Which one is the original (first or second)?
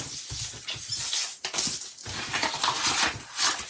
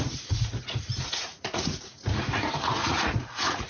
first